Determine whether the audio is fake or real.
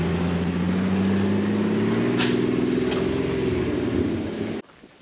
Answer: real